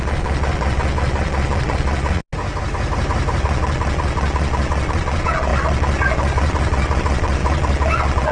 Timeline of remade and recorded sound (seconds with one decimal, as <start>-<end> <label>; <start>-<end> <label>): 0.0-2.2 remade; 2.2-3.4 recorded; 3.4-8.3 remade